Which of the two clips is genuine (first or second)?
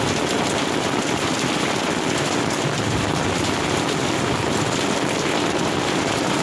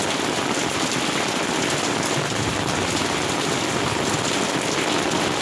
second